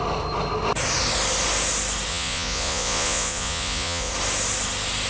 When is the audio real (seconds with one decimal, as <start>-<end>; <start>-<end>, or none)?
0.0-2.1; 4.1-5.1